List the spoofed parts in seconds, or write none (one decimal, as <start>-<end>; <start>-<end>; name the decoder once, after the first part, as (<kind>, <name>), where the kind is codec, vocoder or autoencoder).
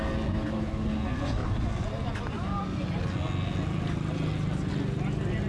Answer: none